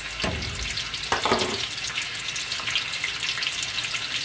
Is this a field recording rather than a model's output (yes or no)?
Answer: yes